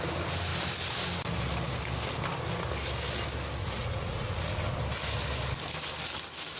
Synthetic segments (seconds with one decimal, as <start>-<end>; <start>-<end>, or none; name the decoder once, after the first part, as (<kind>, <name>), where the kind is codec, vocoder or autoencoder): 3.6-4.8 (vocoder, Vocos)